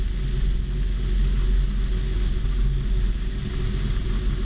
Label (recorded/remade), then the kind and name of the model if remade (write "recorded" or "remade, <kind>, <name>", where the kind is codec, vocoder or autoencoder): recorded